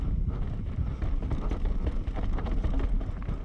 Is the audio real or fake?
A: real